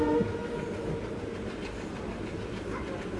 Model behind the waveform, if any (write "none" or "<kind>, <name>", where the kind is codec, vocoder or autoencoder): none